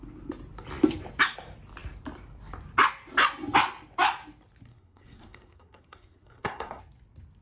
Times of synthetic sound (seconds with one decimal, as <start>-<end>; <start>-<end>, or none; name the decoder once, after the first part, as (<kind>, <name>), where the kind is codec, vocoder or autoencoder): 4.7-6.8 (codec, SNAC)